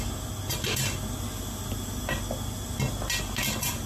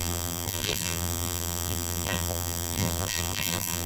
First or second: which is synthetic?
second